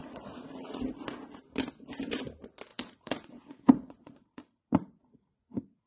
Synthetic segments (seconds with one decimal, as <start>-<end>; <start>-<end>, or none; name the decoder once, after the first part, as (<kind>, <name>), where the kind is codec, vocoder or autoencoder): 0.0-0.8 (vocoder, Vocos); 2.7-5.9